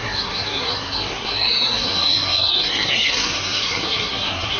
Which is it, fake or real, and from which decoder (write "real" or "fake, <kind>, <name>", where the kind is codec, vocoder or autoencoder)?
fake, codec, SNAC